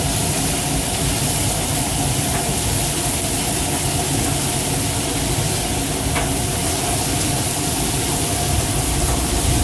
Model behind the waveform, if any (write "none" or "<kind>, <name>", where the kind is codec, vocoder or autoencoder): none